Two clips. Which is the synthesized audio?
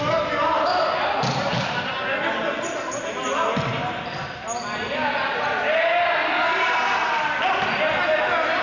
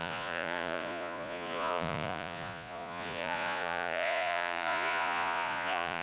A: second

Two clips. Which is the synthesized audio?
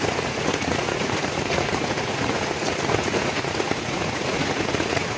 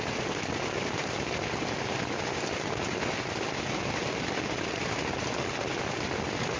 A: first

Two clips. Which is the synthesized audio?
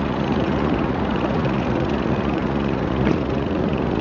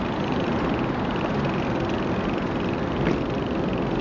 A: first